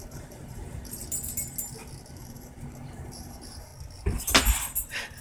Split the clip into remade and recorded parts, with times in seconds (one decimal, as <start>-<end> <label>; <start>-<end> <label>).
0.0-1.0 remade; 1.0-2.1 recorded; 2.1-3.7 remade; 3.7-5.2 recorded